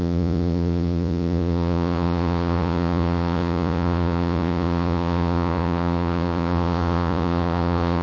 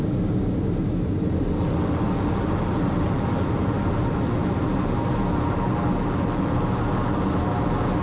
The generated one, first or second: first